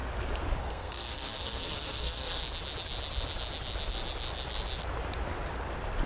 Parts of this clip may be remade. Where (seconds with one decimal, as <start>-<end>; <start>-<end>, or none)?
0.6-2.4